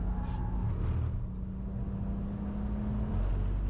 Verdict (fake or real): real